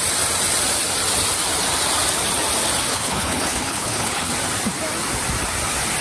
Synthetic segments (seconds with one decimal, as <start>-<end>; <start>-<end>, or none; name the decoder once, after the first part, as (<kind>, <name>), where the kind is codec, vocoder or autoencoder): 2.9-4.3 (codec, HILCodec)